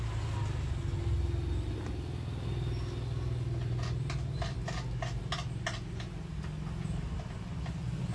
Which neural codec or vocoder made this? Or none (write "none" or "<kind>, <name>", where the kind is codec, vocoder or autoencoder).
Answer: none